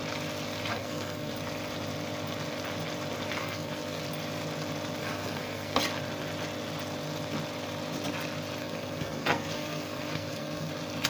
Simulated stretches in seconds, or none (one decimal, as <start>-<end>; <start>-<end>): 0.7-1.3; 3.4-4.0; 5.0-5.8; 8.6-10.7